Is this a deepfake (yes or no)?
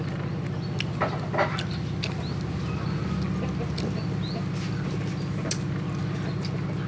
no